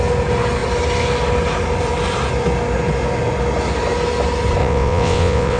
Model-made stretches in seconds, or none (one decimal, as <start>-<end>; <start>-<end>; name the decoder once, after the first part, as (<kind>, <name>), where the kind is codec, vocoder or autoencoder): 4.6-5.6 (vocoder, WaveNeXt)